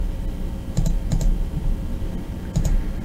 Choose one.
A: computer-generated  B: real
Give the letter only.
B